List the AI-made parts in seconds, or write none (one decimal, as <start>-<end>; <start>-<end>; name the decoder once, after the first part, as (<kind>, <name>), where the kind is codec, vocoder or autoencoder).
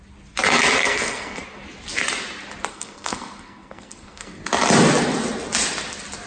0.8-1.4 (codec, SNAC); 2.7-4.4